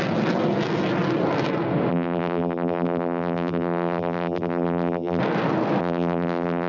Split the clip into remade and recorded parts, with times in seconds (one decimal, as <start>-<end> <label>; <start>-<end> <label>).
0.0-1.9 recorded; 1.9-5.2 remade; 5.2-5.8 recorded; 5.8-6.7 remade